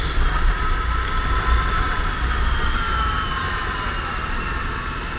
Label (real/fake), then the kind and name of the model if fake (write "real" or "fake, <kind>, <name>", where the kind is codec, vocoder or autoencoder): real